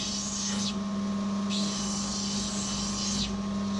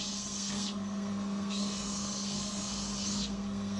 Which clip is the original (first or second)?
first